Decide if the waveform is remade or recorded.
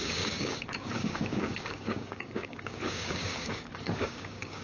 remade